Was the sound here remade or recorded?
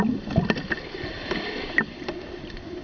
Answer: recorded